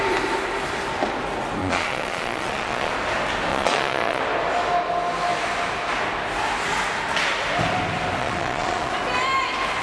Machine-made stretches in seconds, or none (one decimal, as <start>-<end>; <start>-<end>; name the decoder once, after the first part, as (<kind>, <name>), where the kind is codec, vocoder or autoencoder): 1.6-2.9 (vocoder, Vocos); 3.5-4.2; 8.2-8.9